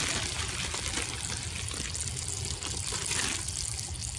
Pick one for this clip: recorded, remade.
recorded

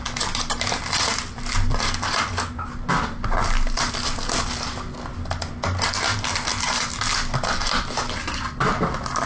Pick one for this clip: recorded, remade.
recorded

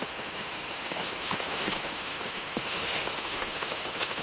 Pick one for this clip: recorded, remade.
remade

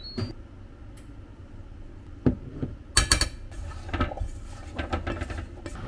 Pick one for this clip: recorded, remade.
recorded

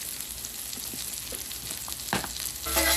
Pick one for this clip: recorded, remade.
recorded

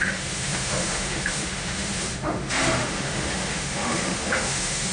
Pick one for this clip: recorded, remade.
remade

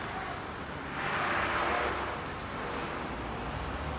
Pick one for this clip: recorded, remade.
recorded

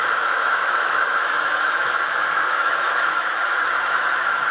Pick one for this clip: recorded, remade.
remade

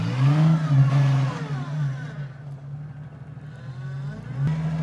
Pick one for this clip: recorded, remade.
recorded